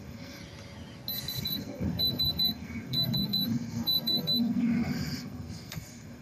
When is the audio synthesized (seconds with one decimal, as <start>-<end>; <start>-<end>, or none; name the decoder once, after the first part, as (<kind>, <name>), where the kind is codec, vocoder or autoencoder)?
0.0-0.4 (codec, SNAC); 1.4-6.2

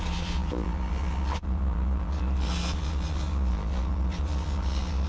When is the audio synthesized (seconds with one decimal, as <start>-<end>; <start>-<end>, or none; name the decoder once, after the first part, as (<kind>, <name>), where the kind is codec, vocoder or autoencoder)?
0.0-5.1 (vocoder, Vocos)

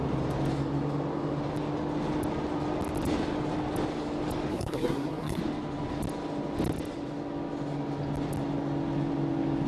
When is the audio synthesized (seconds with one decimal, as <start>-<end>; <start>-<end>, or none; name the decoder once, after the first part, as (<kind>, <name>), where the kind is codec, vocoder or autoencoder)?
4.5-5.4 (codec, SNAC)

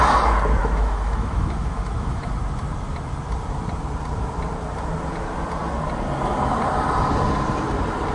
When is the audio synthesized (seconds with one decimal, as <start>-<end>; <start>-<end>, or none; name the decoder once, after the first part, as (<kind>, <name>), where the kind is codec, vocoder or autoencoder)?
0.6-2.3 (autoencoder, DAC-VAE)

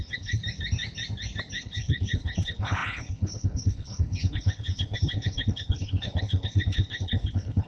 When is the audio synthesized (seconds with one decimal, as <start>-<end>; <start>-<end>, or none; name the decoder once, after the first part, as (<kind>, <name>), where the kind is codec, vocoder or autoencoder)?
0.0-0.4 (codec, HILCodec); 1.6-7.7

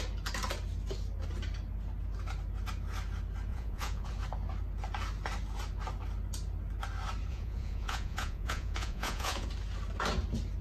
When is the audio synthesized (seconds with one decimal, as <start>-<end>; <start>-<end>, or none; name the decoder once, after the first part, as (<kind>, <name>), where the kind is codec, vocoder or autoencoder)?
3.5-4.1 (vocoder, Vocos); 7.3-9.5

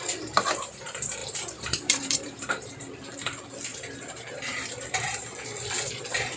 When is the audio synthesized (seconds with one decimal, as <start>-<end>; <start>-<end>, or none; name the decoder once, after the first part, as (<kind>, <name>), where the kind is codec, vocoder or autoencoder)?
1.2-2.5 (vocoder, BigVGAN v2); 3.7-5.5

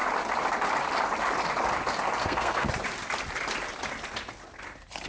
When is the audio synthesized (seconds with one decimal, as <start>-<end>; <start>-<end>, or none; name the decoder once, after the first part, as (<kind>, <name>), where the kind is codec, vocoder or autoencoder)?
2.2-2.7 (codec, SNAC)